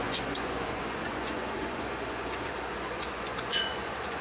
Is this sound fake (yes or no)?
yes